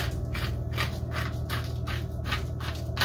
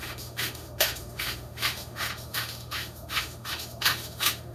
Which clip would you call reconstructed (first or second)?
second